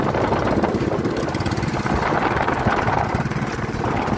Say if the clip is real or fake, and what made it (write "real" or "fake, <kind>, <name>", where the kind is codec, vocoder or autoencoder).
fake, vocoder, BigVGAN v2